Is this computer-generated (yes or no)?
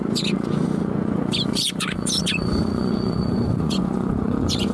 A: yes